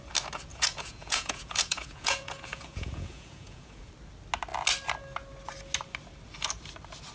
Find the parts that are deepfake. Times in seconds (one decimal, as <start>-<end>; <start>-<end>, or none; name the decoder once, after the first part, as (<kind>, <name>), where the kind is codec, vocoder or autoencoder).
0.5-3.9 (vocoder, Vocos)